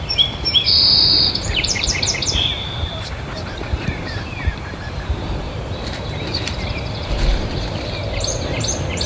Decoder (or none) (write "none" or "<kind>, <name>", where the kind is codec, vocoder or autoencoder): vocoder, BigVGAN v2